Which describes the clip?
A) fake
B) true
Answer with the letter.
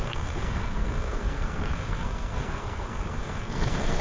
A